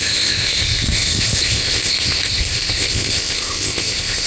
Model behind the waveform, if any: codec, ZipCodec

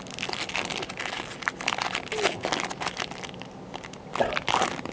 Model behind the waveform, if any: none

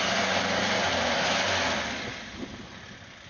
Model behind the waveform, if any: none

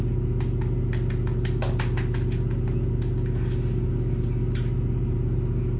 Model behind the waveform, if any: none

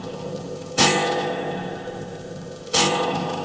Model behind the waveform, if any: codec, ZipCodec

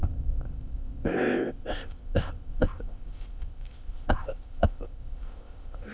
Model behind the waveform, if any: codec, ZipCodec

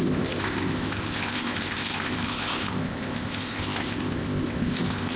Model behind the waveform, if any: codec, ZipCodec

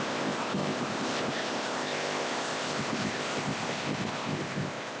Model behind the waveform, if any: codec, ZipCodec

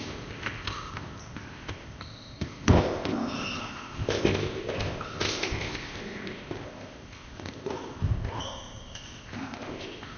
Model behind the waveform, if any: codec, ZipCodec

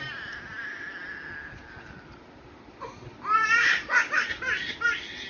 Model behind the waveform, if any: none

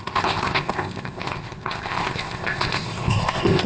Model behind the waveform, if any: codec, ZipCodec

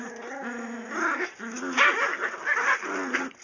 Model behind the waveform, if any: none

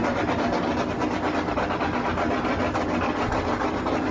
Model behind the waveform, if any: none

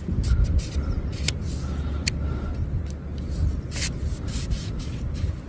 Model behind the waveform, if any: none